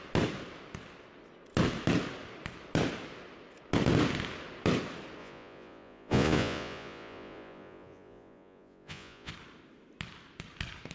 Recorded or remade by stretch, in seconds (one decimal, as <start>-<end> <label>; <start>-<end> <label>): 0.0-5.2 recorded; 5.2-9.3 remade; 9.3-10.9 recorded